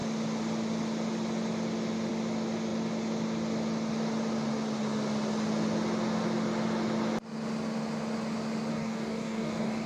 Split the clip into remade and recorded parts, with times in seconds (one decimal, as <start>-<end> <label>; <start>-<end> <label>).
0.0-8.7 recorded; 8.7-9.9 remade